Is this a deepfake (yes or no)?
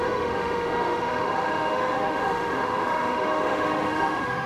yes